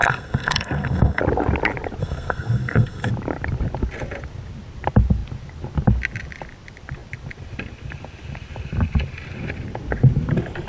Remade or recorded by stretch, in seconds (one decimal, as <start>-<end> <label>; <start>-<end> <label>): 0.0-1.2 remade; 1.2-2.0 recorded; 2.0-3.1 remade; 3.1-10.7 recorded

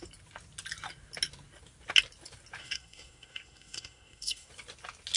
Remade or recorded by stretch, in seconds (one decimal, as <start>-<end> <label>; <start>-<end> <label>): 0.0-2.6 recorded; 2.6-4.5 remade; 4.5-5.2 recorded